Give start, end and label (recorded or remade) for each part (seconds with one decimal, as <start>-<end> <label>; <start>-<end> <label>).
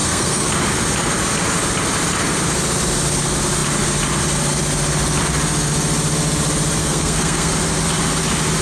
0.0-0.5 remade; 0.5-6.8 recorded; 6.8-7.5 remade; 7.5-8.6 recorded